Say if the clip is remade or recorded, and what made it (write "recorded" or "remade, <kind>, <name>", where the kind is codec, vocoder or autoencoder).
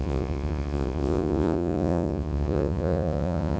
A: remade, vocoder, Vocos